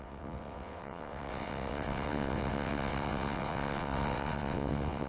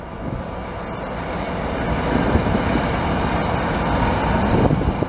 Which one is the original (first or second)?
second